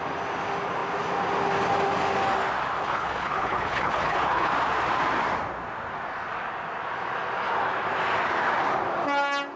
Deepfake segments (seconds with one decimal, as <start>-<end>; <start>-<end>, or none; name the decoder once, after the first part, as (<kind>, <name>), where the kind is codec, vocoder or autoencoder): 2.8-4.5 (codec, HILCodec)